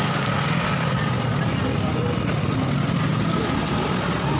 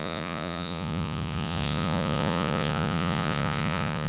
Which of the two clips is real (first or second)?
first